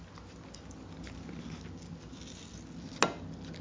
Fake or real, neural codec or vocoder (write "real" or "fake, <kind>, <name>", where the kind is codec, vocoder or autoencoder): real